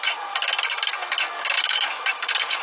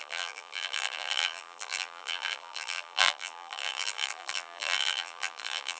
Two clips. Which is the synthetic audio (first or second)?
second